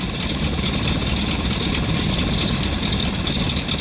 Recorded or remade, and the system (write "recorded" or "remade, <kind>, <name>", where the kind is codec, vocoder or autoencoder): recorded